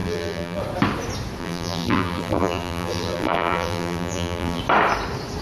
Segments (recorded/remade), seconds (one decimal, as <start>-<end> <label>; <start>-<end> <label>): 0.0-0.6 remade; 0.6-1.4 recorded; 1.4-4.6 remade; 4.6-5.4 recorded

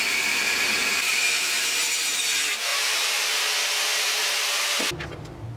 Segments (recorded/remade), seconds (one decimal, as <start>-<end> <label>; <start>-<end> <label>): 0.0-0.8 recorded; 0.8-2.2 remade; 2.2-2.7 recorded; 2.7-3.4 remade; 3.4-4.2 recorded; 4.2-4.9 remade; 4.9-5.6 recorded

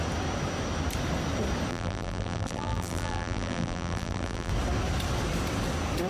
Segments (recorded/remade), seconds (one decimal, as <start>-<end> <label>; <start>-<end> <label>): 0.0-1.7 recorded; 1.7-4.5 remade; 4.5-6.1 recorded

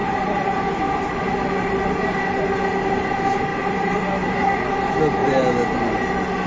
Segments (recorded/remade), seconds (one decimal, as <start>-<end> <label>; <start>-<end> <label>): 0.0-0.6 remade; 0.6-3.5 recorded; 3.5-4.0 remade; 4.0-6.5 recorded

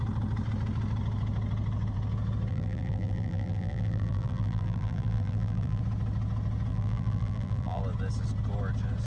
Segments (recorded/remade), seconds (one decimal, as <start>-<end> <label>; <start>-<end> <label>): 0.0-2.5 recorded; 2.5-5.8 remade; 5.8-6.7 recorded; 6.7-7.8 remade; 7.8-9.1 recorded

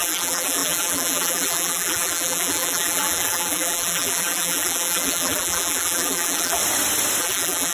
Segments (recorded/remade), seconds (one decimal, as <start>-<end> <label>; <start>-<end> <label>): 0.0-6.6 remade; 6.6-7.2 recorded; 7.2-7.7 remade

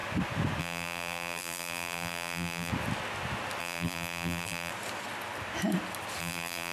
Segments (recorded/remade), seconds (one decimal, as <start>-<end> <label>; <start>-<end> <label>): 0.0-0.6 recorded; 0.6-2.7 remade; 2.7-3.6 recorded; 3.6-4.7 remade; 4.7-6.2 recorded; 6.2-6.7 remade